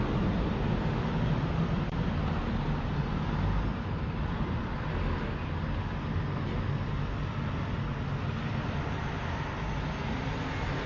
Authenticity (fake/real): real